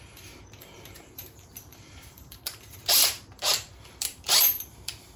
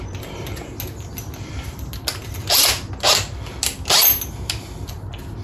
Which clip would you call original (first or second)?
second